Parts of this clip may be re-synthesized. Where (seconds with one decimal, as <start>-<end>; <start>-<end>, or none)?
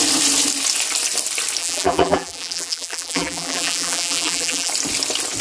1.6-4.7